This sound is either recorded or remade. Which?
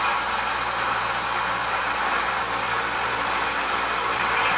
recorded